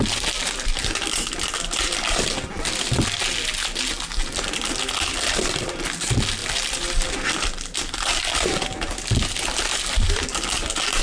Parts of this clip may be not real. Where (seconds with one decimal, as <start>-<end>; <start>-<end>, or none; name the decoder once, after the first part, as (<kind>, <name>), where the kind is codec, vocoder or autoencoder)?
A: none